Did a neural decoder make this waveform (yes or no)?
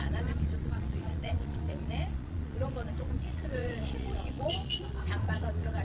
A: yes